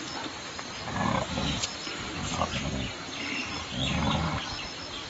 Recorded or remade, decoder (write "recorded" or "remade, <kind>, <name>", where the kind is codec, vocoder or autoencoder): recorded